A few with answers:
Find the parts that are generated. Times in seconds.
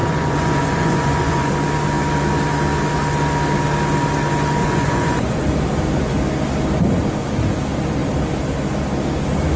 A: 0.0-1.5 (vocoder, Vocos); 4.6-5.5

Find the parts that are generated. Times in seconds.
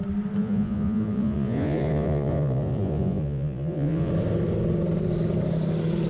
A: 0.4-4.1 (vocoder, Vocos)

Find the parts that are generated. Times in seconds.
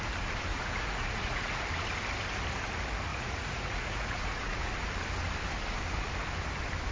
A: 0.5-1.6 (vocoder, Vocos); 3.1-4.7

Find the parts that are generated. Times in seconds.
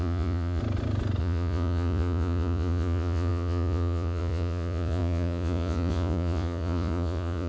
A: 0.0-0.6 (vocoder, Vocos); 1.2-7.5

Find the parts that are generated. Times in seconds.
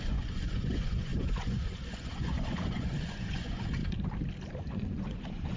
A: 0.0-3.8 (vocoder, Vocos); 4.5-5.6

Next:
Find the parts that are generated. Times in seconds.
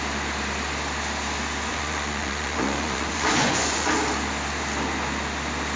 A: 1.7-3.9 (vocoder, Vocos)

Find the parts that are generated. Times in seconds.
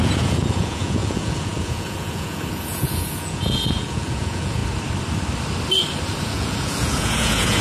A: 0.0-4.6 (vocoder, Vocos); 6.2-7.6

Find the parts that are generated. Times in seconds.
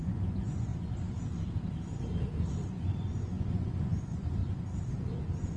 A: 0.0-0.7 (vocoder, Vocos); 2.7-4.4